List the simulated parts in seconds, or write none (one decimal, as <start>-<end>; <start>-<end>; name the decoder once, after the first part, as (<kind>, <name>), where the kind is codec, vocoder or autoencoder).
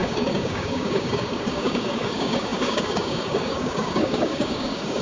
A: 0.0-5.0 (codec, DAC)